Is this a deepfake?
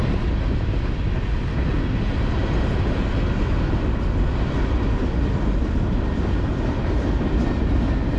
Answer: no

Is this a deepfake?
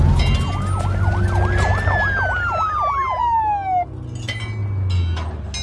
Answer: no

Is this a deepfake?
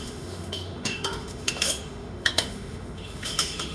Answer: yes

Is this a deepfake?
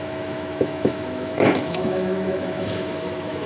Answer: yes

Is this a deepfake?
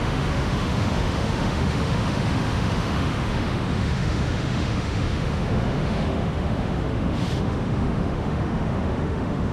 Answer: yes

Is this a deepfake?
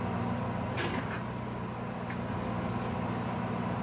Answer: no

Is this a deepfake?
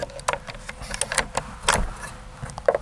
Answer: no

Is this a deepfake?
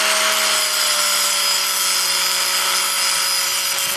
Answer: no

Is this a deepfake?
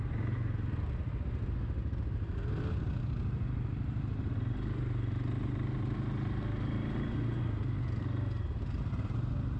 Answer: no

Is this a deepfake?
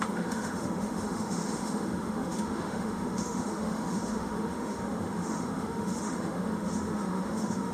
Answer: yes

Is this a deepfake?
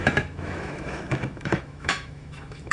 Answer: yes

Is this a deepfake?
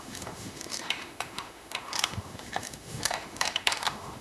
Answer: yes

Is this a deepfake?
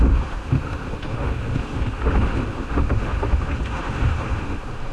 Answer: yes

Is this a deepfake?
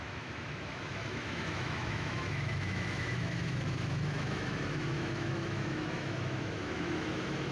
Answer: yes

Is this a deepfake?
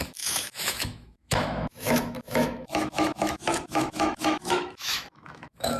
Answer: yes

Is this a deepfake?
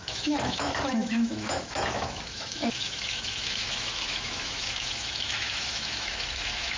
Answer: yes